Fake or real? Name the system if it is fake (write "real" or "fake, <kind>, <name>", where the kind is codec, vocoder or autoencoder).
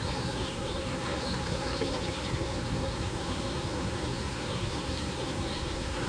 fake, codec, SNAC